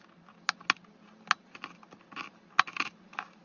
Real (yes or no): yes